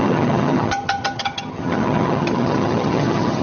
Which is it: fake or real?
fake